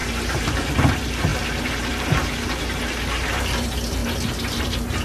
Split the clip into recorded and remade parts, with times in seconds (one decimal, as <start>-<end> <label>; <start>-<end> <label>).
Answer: 0.0-4.0 remade; 4.0-4.6 recorded; 4.6-5.0 remade